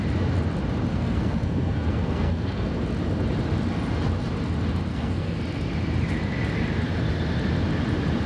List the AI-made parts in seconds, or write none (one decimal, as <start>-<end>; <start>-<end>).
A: 0.9-2.7; 4.9-5.4